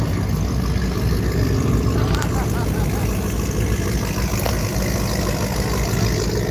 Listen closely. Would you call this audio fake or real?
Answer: real